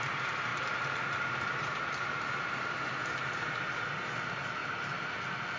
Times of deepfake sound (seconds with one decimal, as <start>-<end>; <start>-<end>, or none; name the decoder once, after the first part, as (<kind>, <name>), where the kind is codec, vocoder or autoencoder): 0.0-4.6 (vocoder, BigVGAN v2)